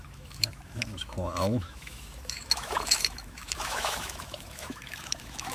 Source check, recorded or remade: remade